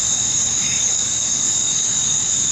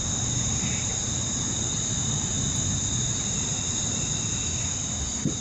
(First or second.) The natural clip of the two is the second